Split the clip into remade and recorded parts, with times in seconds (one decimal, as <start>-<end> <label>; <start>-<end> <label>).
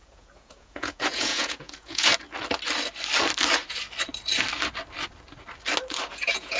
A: 0.0-2.1 remade; 2.1-6.1 recorded; 6.1-6.6 remade